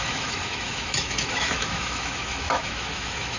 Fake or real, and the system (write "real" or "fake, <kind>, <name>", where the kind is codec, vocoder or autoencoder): fake, autoencoder, DAC-VAE